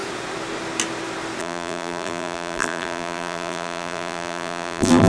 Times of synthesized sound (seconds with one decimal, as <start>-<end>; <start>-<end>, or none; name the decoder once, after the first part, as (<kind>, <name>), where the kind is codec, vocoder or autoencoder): 1.4-5.1 (vocoder, BigVGAN v2)